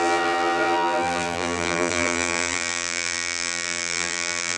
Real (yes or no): no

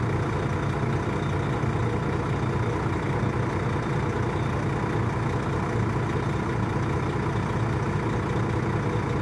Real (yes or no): yes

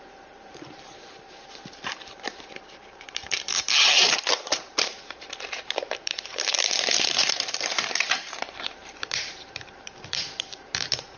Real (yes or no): no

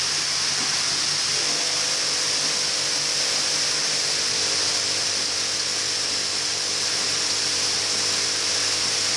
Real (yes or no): yes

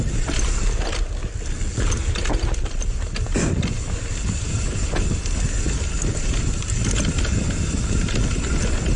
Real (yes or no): yes